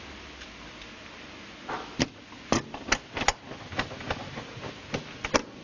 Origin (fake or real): real